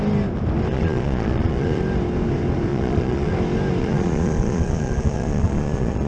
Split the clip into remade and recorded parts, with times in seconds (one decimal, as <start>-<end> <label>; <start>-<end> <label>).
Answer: 0.0-0.7 recorded; 0.7-1.8 remade; 1.8-2.7 recorded; 2.7-3.3 remade; 3.3-3.8 recorded; 3.8-6.1 remade